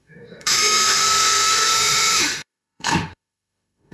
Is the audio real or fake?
fake